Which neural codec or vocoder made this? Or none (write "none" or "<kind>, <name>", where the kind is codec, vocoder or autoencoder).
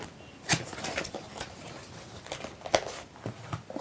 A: none